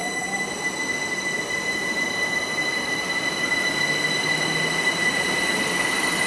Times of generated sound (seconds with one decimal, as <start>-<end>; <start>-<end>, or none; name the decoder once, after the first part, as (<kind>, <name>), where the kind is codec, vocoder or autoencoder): 0.0-0.5 (vocoder, BigVGAN v2)